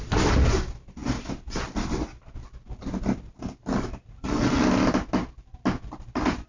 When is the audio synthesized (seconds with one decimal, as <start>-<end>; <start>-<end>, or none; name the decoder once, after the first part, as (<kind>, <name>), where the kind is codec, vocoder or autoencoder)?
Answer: none